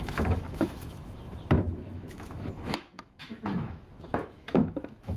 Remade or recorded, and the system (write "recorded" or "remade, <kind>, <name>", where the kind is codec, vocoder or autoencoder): remade, autoencoder, DAC-VAE